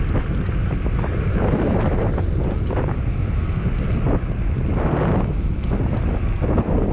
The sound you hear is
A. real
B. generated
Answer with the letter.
A